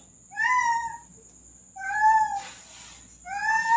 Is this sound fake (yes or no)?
no